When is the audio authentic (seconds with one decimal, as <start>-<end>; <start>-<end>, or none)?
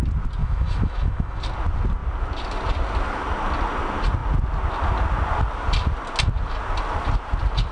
0.0-0.4; 1.4-7.7